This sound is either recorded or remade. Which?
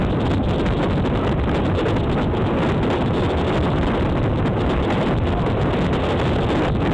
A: recorded